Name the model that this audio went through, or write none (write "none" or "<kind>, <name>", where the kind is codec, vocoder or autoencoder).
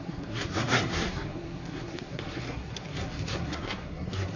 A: codec, SNAC